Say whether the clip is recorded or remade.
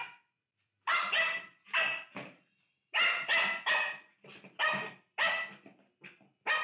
recorded